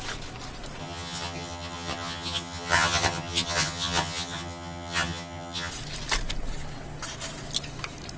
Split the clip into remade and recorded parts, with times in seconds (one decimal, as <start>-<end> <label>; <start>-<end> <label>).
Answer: 0.0-0.8 recorded; 0.8-5.7 remade; 5.7-8.2 recorded

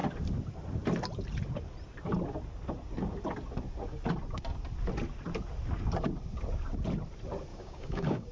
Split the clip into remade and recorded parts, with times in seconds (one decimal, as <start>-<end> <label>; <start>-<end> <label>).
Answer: 0.0-7.5 recorded; 7.5-8.3 remade

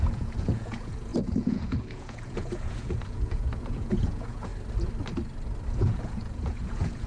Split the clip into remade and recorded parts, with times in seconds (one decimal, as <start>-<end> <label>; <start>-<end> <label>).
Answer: 0.0-4.5 remade; 4.5-5.7 recorded; 5.7-7.1 remade

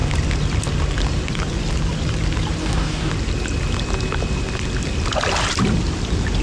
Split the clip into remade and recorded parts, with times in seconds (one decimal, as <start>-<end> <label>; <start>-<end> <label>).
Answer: 0.0-2.6 recorded; 2.6-3.1 remade; 3.1-6.4 recorded

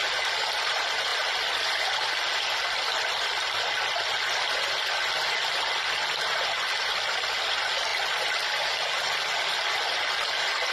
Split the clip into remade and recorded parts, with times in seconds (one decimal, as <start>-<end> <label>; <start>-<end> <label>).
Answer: 0.0-10.7 recorded

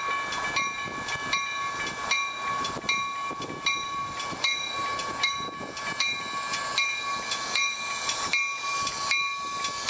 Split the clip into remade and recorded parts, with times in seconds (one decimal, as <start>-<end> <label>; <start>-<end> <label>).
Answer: 0.0-9.9 recorded

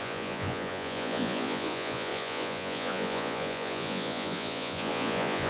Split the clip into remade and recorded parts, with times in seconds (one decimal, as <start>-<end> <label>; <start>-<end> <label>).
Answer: 0.0-5.5 remade

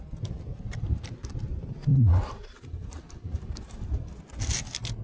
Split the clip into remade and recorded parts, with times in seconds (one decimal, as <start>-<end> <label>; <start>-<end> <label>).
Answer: 0.0-0.5 recorded; 0.5-1.3 remade; 1.3-1.9 recorded; 1.9-4.2 remade; 4.2-5.0 recorded